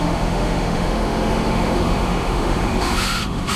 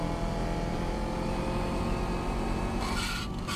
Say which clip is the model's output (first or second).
first